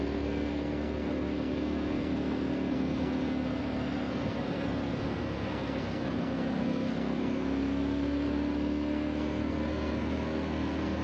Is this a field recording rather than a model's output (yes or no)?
no